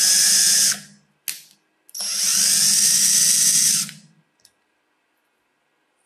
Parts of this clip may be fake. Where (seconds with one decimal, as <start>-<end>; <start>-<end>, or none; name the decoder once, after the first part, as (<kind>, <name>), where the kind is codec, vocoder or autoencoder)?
none